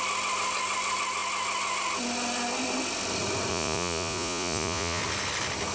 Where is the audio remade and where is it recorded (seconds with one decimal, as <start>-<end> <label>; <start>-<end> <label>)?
0.0-3.5 recorded; 3.5-5.0 remade; 5.0-5.7 recorded